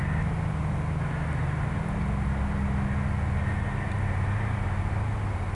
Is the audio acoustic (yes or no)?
yes